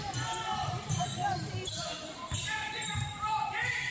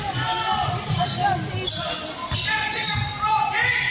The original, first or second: second